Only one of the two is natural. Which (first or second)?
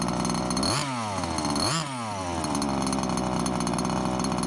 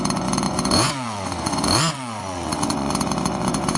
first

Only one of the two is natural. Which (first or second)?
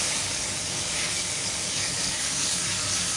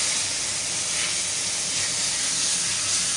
second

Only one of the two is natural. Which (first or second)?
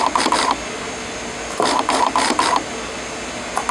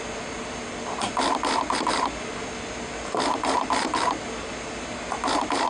first